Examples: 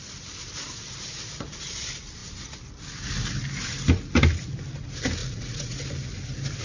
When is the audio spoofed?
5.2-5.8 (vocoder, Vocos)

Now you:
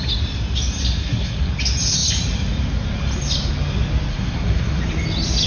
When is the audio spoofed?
1.0-1.5 (codec, SNAC); 4.1-4.8